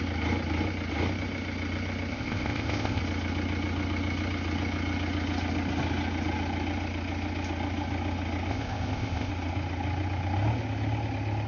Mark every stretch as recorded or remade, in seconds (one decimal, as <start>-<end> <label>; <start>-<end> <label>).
0.0-2.1 recorded; 2.1-3.0 remade; 3.0-8.5 recorded; 8.5-9.3 remade; 9.3-11.5 recorded